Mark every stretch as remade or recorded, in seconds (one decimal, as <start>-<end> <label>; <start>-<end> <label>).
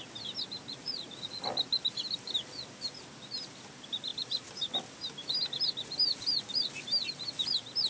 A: 0.0-0.8 recorded; 0.8-1.4 remade; 1.4-7.9 recorded